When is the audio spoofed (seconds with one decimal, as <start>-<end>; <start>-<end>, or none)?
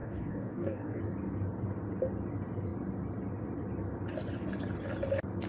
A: 0.0-1.0